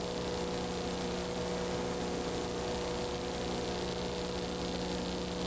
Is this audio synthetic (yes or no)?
no